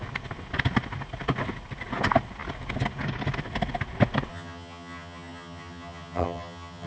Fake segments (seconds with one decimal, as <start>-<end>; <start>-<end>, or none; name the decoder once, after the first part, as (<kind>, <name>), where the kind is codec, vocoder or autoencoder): 4.3-6.9 (vocoder, HiFi-GAN)